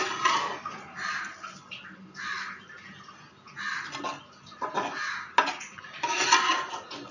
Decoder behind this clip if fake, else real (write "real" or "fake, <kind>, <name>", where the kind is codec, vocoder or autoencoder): real